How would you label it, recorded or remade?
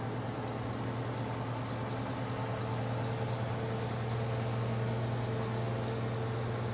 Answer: recorded